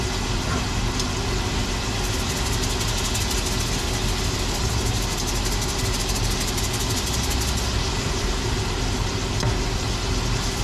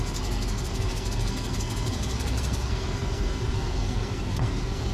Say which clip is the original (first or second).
first